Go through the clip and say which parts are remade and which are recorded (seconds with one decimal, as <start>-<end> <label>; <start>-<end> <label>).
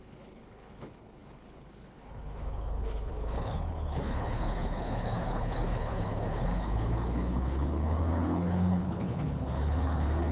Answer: 0.0-10.3 remade